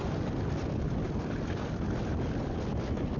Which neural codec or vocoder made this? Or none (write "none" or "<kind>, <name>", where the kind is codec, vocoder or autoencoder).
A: none